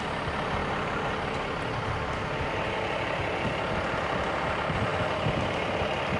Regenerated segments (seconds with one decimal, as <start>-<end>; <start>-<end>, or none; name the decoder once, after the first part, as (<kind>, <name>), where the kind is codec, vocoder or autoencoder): none